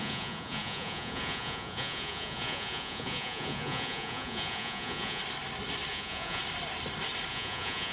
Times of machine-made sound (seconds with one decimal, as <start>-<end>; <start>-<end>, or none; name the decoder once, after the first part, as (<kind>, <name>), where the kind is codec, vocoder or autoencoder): 0.0-5.2 (vocoder, Vocos); 5.9-6.4; 7.3-7.9